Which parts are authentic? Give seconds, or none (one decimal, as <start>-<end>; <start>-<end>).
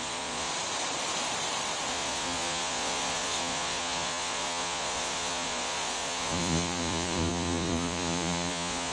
0.5-1.9